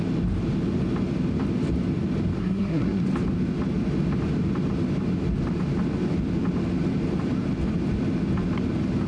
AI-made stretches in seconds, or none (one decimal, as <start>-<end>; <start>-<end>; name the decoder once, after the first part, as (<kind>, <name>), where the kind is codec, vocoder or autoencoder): 2.4-3.0 (codec, SNAC)